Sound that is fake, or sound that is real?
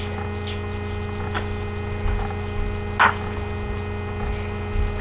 real